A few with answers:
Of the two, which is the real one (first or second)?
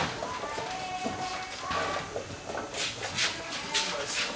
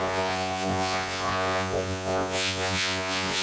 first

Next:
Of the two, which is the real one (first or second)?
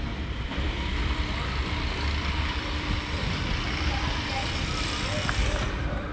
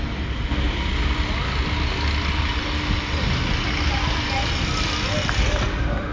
second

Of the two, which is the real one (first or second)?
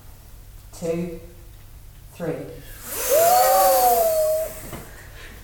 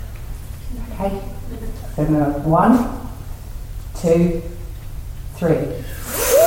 first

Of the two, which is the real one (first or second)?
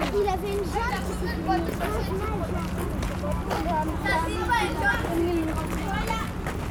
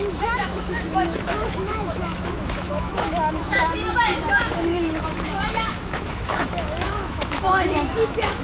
first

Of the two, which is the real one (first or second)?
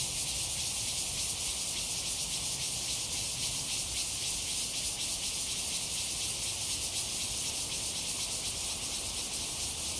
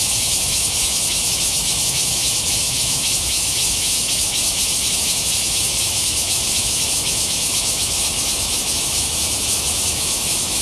first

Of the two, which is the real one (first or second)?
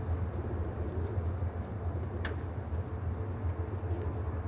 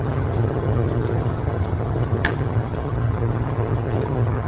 first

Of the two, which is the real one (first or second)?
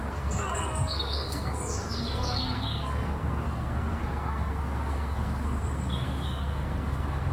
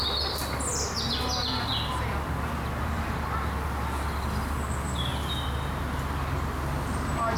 second